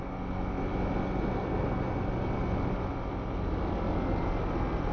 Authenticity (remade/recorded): recorded